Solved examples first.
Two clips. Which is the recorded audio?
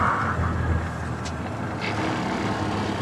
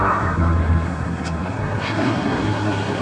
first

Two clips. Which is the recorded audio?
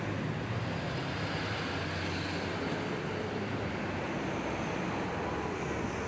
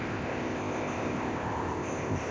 first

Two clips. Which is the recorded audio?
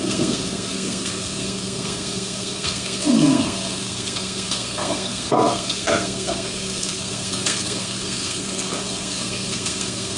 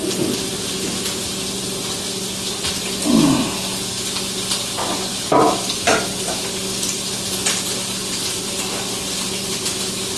second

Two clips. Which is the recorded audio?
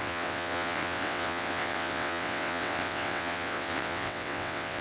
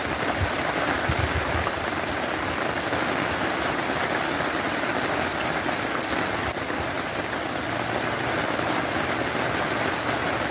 second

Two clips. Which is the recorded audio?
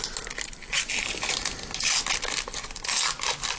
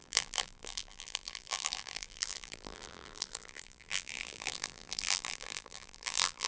first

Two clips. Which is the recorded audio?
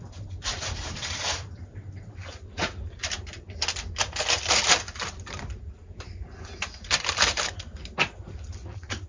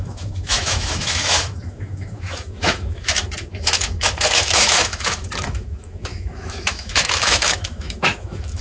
first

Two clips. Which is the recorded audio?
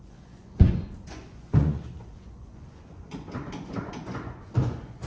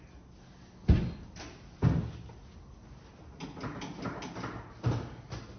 second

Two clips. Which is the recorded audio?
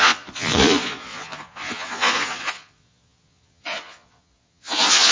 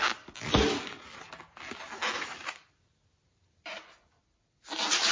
second